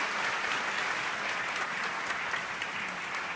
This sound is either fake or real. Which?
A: real